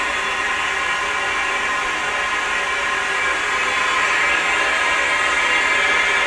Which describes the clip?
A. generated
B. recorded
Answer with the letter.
B